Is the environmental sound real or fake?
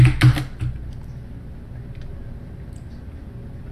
real